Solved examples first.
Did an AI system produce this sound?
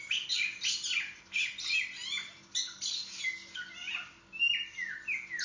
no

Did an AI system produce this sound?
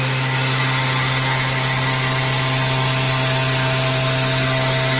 no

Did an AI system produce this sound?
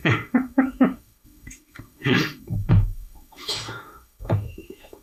yes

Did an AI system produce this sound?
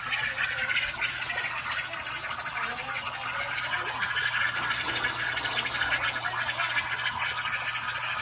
no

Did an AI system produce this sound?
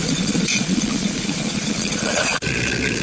yes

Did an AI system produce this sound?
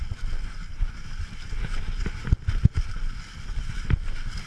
no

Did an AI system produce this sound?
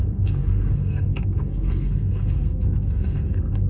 yes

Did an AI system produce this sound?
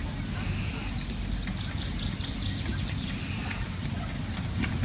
no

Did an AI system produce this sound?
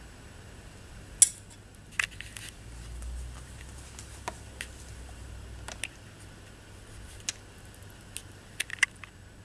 no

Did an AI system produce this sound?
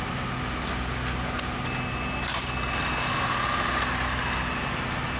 no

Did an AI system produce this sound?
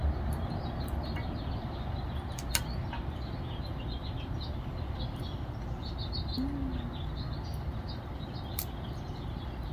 no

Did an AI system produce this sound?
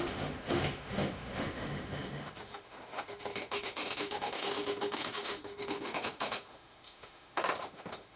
yes